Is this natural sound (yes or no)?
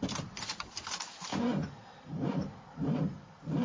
no